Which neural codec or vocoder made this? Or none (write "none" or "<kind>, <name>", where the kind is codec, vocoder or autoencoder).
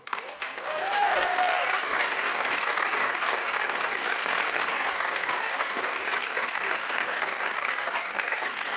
codec, DAC